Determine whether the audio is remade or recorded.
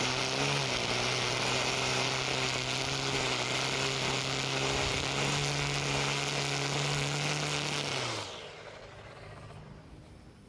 recorded